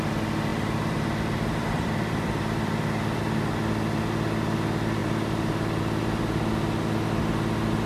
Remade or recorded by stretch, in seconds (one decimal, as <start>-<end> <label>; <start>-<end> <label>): 0.0-0.5 recorded; 0.5-3.2 remade; 3.2-5.0 recorded; 5.0-5.8 remade; 5.8-7.9 recorded